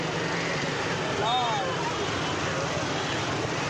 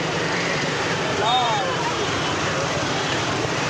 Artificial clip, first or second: second